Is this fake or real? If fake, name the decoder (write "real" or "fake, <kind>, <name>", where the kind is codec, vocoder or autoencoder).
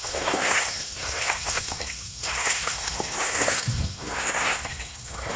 fake, codec, SNAC